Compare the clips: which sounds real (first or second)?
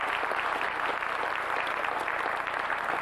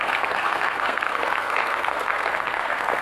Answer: first